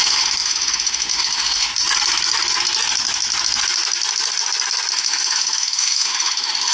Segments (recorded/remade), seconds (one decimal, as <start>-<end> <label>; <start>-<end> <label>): 0.0-1.7 remade; 1.7-4.9 recorded; 4.9-6.7 remade